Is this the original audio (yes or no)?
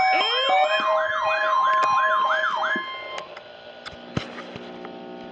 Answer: yes